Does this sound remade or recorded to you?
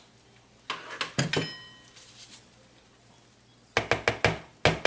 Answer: recorded